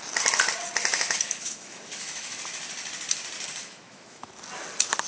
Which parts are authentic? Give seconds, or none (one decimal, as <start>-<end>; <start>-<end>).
0.0-0.9; 2.4-3.6; 4.3-5.1

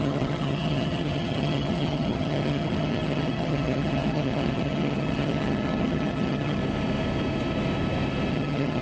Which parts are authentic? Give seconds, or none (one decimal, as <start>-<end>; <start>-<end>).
6.6-8.3